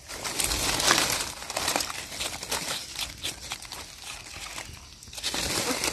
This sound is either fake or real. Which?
real